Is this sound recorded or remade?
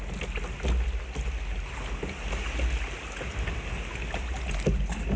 recorded